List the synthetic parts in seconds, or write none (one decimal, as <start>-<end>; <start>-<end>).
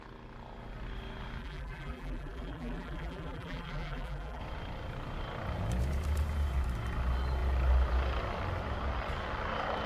1.4-4.4